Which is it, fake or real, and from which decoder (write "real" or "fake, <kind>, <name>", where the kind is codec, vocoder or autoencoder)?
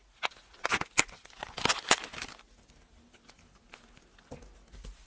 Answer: real